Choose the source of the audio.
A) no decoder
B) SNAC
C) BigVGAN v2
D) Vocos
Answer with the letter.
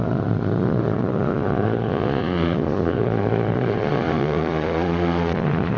D